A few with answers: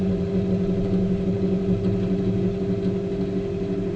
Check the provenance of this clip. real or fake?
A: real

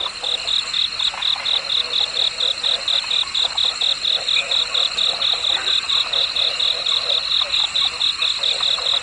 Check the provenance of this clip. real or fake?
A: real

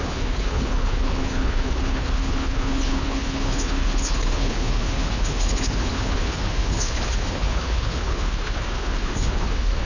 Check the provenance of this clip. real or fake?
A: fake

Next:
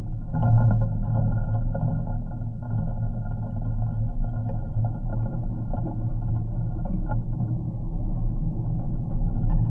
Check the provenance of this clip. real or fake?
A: real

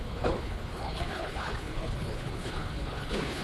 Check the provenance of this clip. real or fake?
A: fake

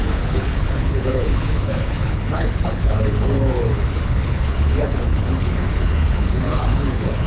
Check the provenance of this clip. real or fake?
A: fake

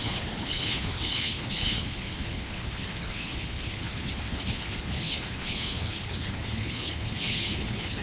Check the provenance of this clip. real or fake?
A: fake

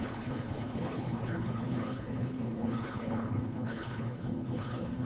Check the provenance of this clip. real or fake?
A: fake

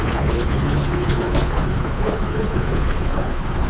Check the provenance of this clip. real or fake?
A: fake